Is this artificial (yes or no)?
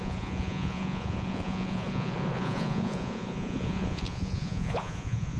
yes